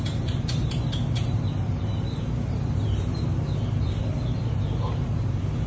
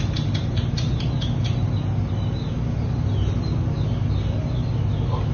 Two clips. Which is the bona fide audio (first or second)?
second